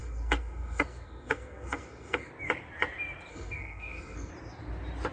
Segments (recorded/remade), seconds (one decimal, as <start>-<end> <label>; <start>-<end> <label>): 0.0-2.3 remade; 2.3-3.3 recorded; 3.3-4.3 remade; 4.3-5.1 recorded